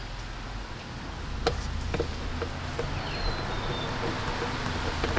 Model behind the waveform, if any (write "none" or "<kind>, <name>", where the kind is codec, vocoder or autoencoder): none